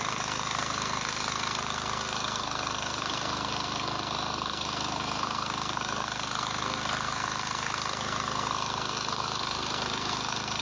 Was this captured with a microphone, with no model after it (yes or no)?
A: no